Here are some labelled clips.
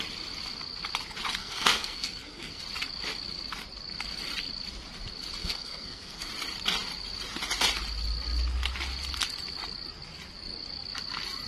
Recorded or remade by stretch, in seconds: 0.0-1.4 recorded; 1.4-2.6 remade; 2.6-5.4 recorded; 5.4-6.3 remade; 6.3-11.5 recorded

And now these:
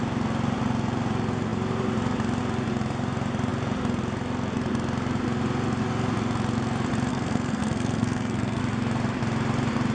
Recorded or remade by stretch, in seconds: 0.0-7.1 recorded; 7.1-8.6 remade; 8.6-9.9 recorded

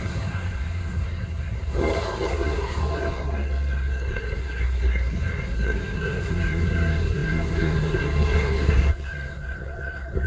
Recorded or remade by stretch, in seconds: 0.0-10.3 remade

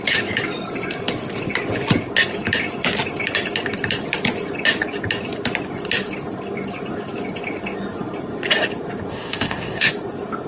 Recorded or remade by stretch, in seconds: 0.0-9.1 recorded; 9.1-9.9 remade; 9.9-10.5 recorded

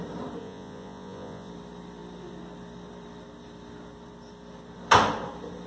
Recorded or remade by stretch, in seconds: 0.0-0.4 recorded; 0.4-1.5 remade; 1.5-5.7 recorded

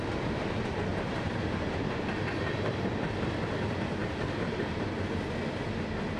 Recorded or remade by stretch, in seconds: 0.0-0.9 recorded; 0.9-2.9 remade; 2.9-4.0 recorded; 4.0-4.9 remade; 4.9-6.2 recorded

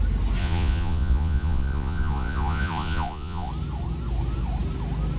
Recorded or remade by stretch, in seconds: 0.0-0.4 recorded; 0.4-3.5 remade; 3.5-5.2 recorded